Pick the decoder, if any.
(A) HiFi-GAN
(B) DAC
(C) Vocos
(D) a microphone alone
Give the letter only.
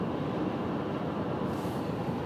D